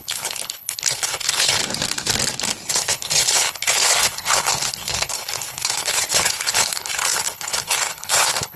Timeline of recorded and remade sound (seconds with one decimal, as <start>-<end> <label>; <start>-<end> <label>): 0.0-1.6 remade; 1.6-2.7 recorded; 2.7-8.6 remade